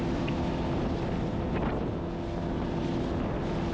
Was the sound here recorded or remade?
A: recorded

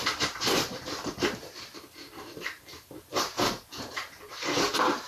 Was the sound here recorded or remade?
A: remade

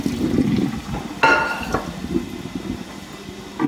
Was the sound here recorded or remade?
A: recorded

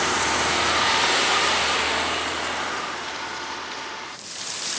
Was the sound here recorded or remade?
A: remade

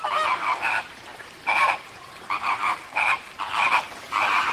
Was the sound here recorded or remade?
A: remade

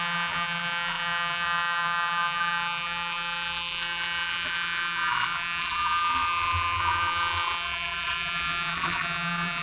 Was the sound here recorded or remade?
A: remade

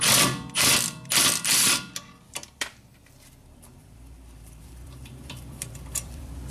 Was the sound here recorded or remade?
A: remade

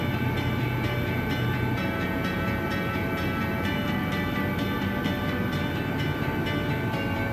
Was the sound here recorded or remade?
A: recorded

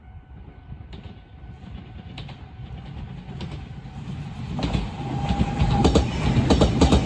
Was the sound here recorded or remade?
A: recorded